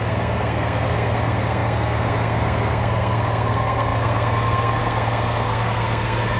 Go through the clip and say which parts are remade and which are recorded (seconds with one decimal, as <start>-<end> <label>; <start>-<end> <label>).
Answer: 0.0-6.4 remade